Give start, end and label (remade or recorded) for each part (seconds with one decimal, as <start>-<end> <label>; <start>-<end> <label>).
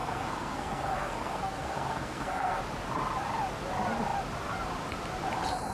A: 0.0-2.6 remade; 2.6-5.7 recorded